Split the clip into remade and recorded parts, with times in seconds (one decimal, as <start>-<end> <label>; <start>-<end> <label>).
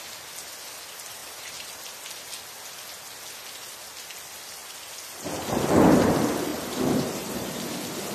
0.0-1.2 recorded; 1.2-1.8 remade; 1.8-6.5 recorded; 6.5-7.6 remade; 7.6-8.1 recorded